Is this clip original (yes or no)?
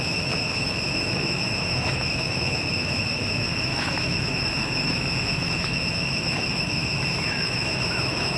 no